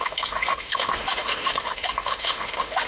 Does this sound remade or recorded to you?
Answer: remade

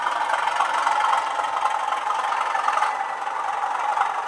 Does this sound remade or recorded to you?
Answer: recorded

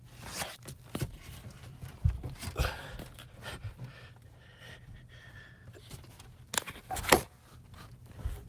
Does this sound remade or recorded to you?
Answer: recorded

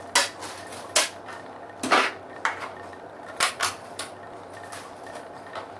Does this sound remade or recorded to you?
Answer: recorded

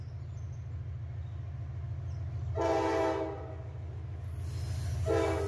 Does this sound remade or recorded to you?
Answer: recorded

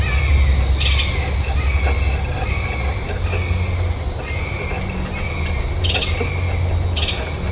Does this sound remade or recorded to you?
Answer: recorded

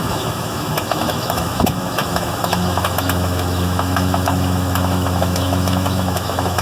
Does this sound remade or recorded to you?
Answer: remade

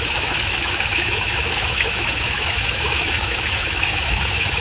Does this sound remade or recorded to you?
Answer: remade